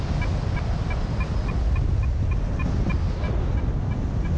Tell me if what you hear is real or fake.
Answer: real